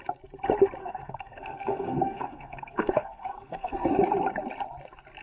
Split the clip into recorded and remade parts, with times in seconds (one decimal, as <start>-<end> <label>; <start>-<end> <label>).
0.0-0.8 recorded; 0.8-3.9 remade; 3.9-5.2 recorded